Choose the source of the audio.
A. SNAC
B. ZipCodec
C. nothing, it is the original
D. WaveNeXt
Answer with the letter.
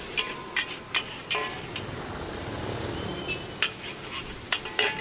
C